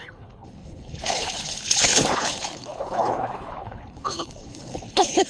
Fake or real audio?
fake